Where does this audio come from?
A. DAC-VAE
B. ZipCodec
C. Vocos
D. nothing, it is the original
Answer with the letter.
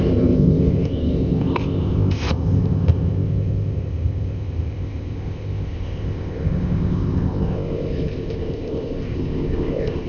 B